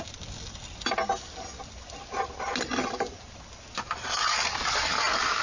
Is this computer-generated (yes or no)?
no